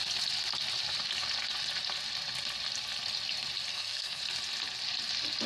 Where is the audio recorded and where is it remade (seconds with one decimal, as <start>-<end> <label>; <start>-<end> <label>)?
0.0-3.7 recorded; 3.7-4.2 remade; 4.2-5.5 recorded